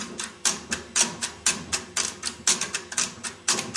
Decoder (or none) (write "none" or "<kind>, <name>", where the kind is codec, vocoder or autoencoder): none